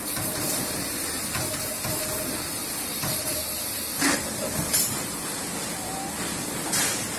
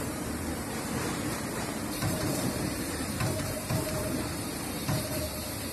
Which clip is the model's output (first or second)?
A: second